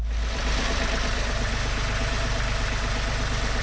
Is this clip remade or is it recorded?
recorded